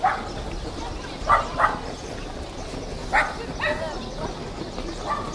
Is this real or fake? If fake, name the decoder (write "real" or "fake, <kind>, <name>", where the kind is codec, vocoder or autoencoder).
real